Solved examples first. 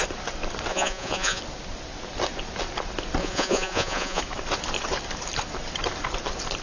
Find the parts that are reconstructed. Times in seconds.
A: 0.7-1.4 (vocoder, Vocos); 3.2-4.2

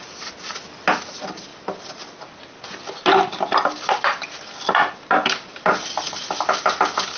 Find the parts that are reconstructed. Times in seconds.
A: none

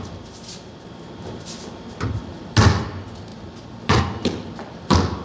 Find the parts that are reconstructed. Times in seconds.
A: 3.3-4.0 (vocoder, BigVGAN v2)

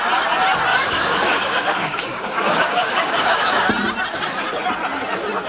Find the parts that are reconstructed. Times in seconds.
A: 0.7-3.7 (codec, DAC)

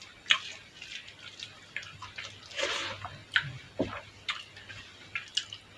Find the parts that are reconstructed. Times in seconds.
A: none

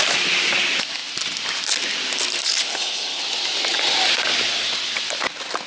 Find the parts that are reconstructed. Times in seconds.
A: 2.7-3.2 (codec, HILCodec)

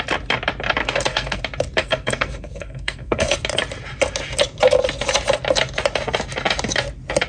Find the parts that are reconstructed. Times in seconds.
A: 0.8-1.4 (codec, SNAC); 1.8-3.3

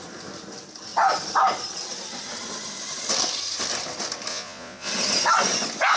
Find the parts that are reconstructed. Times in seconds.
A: 4.3-4.9 (vocoder, Vocos)